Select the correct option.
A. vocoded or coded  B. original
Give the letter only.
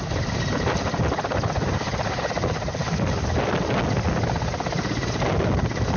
B